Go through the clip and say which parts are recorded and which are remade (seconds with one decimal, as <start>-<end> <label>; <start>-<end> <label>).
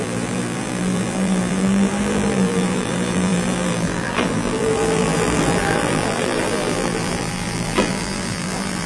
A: 0.0-8.9 remade